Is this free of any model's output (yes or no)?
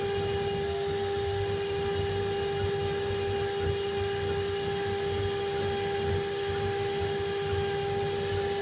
yes